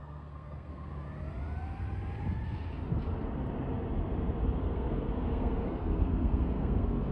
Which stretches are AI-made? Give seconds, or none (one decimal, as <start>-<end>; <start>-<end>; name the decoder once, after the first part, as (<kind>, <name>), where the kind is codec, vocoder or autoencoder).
0.0-0.9 (codec, SNAC); 4.6-7.1